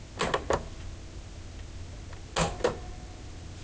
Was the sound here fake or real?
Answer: real